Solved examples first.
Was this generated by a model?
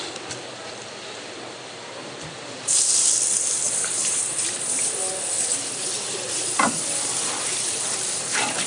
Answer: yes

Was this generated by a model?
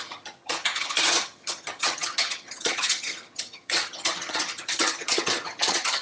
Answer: yes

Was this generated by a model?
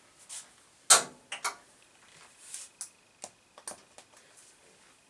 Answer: no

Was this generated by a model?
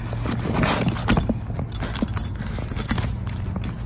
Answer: no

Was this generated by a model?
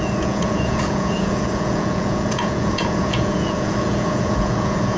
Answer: yes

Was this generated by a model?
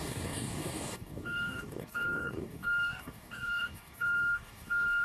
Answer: yes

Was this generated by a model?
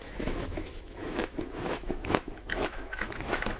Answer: yes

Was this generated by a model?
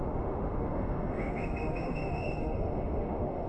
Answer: yes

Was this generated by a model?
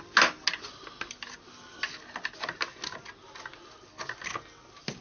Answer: no